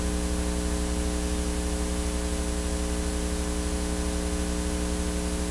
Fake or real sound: real